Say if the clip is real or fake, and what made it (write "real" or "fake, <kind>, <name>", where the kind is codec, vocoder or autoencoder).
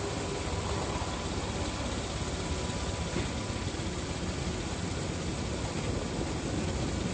real